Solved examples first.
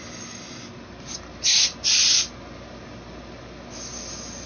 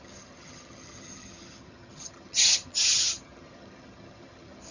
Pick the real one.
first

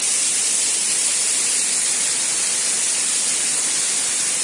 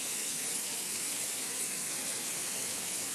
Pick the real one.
first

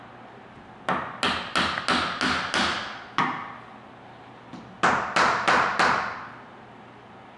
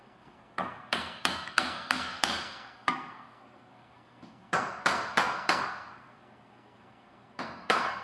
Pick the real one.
first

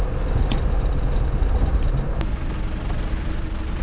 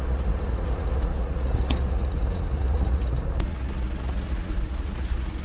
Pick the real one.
first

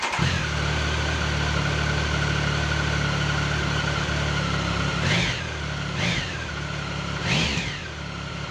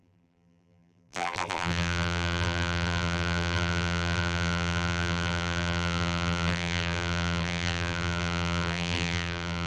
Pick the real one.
first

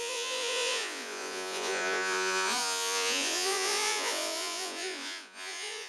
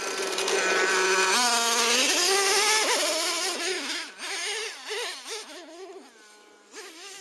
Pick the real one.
second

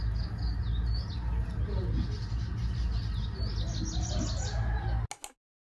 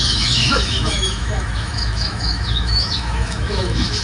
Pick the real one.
first